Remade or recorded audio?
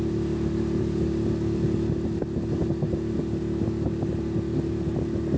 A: recorded